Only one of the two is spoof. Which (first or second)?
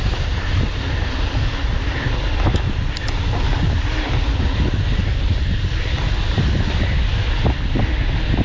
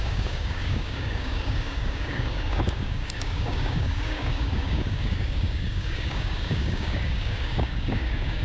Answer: second